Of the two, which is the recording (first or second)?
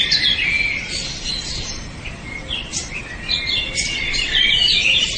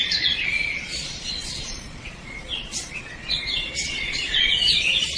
first